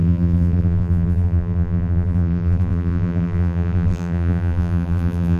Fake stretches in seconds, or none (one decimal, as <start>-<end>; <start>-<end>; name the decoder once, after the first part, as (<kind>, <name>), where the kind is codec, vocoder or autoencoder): 0.0-5.4 (vocoder, BigVGAN v2)